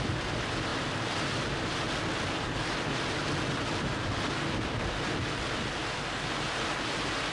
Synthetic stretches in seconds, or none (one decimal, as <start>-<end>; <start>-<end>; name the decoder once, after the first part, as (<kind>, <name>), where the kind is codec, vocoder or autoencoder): none